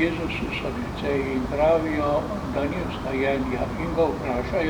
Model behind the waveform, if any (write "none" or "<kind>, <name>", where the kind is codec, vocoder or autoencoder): none